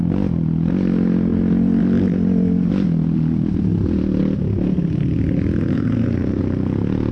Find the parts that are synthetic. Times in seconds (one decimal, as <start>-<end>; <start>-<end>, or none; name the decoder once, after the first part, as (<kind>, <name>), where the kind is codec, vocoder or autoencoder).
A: 5.7-6.4 (codec, SNAC)